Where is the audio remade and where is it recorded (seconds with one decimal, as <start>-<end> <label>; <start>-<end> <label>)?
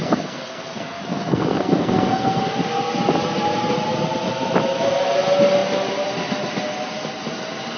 0.0-2.4 remade; 2.4-7.8 recorded